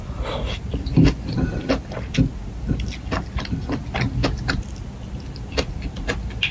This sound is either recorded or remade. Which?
recorded